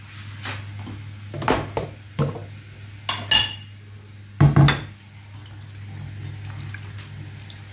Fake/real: real